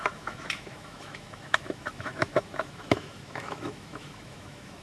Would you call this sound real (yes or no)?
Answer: no